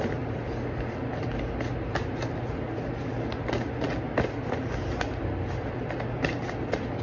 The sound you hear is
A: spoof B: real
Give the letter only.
B